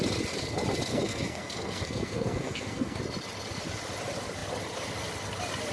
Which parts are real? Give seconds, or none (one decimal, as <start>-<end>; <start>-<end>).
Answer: 0.0-0.9; 3.0-5.7